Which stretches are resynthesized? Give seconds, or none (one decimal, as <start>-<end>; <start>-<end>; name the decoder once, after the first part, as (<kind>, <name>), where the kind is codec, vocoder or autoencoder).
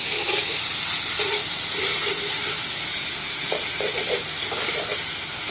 1.4-4.7 (vocoder, BigVGAN v2)